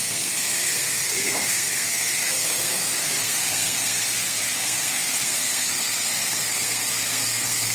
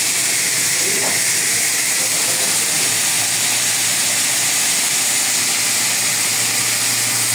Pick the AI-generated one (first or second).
first